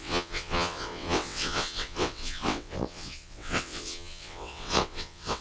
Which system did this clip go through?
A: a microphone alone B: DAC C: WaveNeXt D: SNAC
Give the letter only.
C